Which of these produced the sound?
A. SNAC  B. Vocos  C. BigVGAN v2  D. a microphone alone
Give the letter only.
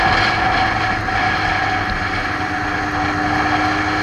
D